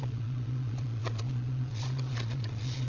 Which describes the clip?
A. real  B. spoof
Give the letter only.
B